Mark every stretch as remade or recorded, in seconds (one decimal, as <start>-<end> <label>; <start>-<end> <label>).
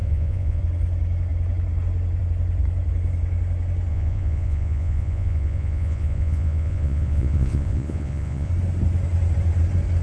0.0-0.6 remade; 0.6-3.9 recorded; 3.9-8.5 remade; 8.5-10.0 recorded